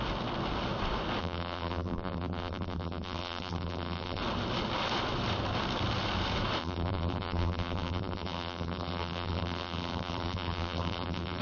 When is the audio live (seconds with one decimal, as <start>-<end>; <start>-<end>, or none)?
0.0-1.2; 4.2-6.6